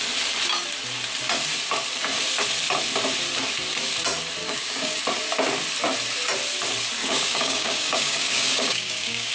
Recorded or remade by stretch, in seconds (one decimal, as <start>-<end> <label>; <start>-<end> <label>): 0.0-4.4 recorded; 4.4-5.0 remade; 5.0-7.0 recorded; 7.0-9.3 remade